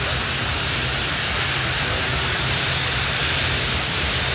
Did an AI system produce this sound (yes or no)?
no